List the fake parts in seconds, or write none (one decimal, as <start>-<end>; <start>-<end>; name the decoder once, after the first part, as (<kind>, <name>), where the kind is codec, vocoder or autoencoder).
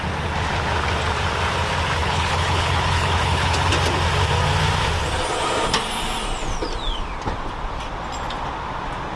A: 2.0-3.7 (codec, HILCodec)